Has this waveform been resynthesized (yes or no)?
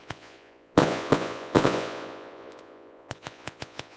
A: yes